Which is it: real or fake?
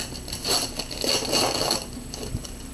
real